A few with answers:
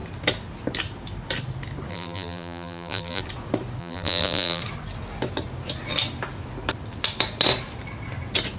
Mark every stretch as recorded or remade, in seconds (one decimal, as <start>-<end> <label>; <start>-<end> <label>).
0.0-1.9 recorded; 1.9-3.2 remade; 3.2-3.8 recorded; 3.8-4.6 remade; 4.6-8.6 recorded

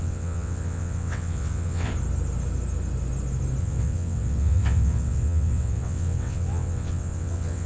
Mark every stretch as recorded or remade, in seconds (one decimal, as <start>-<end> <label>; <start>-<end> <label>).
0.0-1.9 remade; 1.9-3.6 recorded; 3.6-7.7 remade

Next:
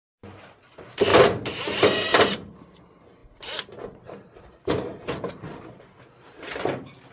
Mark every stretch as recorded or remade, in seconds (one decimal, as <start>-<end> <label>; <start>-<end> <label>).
0.0-1.1 recorded; 1.1-2.6 remade; 2.6-3.2 recorded; 3.2-5.3 remade; 5.3-7.1 recorded

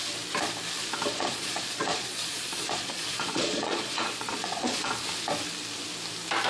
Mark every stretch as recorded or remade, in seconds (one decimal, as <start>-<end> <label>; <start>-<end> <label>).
0.0-1.1 recorded; 1.1-5.0 remade; 5.0-6.5 recorded

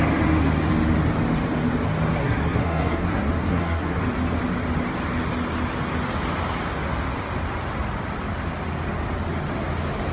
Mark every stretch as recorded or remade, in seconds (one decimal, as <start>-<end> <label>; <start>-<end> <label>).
0.0-2.2 recorded; 2.2-4.0 remade; 4.0-10.1 recorded